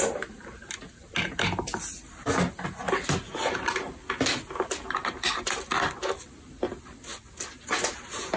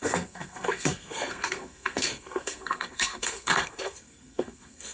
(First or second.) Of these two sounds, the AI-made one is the second